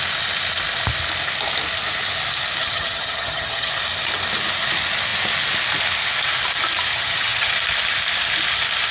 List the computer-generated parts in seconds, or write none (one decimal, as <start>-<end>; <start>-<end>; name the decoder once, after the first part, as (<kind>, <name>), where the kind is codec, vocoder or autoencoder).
2.6-3.7 (vocoder, HiFi-GAN); 6.9-7.5